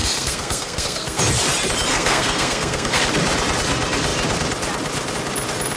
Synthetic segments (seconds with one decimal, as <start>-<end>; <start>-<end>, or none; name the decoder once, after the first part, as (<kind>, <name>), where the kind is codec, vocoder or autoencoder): 0.0-1.2 (codec, SNAC); 1.9-3.0